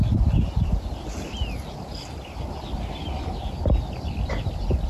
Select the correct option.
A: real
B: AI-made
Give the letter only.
A